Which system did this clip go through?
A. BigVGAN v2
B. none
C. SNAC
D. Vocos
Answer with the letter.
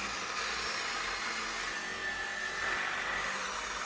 B